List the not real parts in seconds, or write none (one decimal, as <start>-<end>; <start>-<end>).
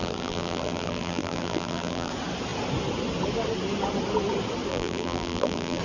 0.0-2.1; 4.7-5.8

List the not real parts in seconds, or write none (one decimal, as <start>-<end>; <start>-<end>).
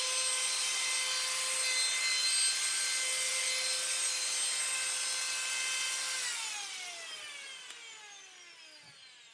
none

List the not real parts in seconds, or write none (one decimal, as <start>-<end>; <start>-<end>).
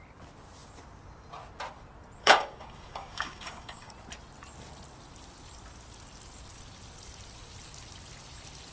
2.2-3.9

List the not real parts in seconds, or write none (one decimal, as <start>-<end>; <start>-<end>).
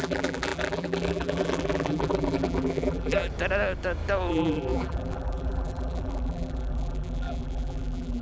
0.0-3.3; 4.3-8.2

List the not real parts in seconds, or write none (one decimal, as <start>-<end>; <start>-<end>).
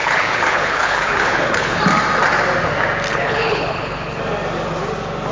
0.0-1.8; 3.1-4.2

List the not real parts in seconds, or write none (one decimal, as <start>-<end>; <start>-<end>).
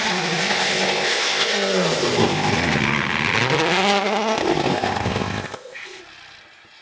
0.4-2.5; 4.7-6.0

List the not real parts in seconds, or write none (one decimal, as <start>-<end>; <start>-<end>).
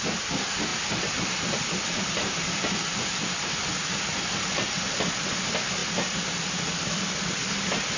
0.7-4.3; 5.8-8.0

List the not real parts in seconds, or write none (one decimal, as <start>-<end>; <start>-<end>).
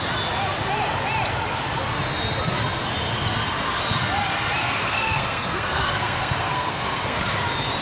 4.6-7.2